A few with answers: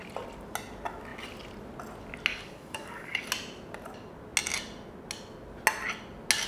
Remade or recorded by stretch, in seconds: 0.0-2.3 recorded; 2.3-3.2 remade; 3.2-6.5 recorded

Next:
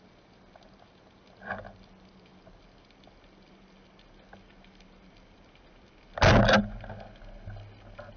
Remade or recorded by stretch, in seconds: 0.0-8.2 recorded

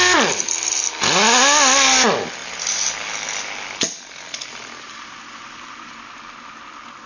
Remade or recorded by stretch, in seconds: 0.0-7.1 recorded

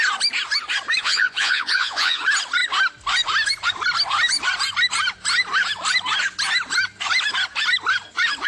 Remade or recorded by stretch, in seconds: 0.0-1.0 recorded; 1.0-2.2 remade; 2.2-8.5 recorded

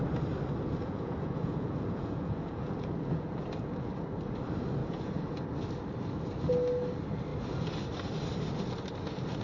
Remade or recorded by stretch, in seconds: 0.0-0.7 recorded; 0.7-4.0 remade; 4.0-4.8 recorded; 4.8-5.4 remade; 5.4-9.4 recorded

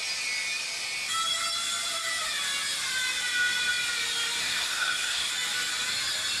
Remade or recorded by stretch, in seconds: 0.0-4.4 recorded; 4.4-5.3 remade; 5.3-6.4 recorded

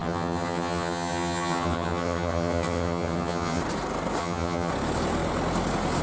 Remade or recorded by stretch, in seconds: 0.0-3.6 remade; 3.6-4.2 recorded; 4.2-4.7 remade; 4.7-6.0 recorded